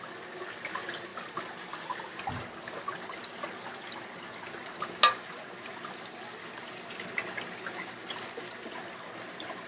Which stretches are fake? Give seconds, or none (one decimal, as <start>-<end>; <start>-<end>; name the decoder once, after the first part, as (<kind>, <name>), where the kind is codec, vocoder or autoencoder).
none